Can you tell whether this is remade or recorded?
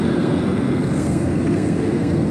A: remade